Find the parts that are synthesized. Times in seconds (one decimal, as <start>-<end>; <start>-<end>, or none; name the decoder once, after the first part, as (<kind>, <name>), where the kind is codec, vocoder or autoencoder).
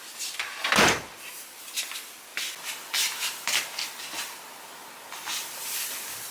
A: 0.0-2.3 (vocoder, BigVGAN v2)